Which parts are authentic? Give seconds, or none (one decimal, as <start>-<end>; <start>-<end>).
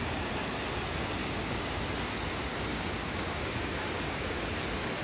0.0-1.2; 1.8-2.7; 4.5-5.0